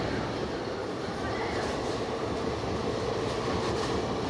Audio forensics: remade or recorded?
recorded